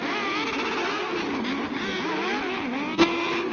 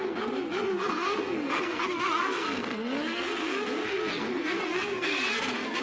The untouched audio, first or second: first